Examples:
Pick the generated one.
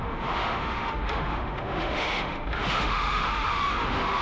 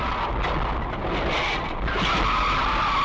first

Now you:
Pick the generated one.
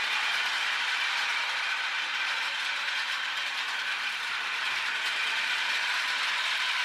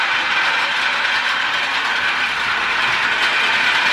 first